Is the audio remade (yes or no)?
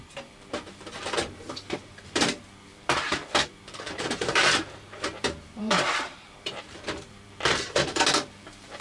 yes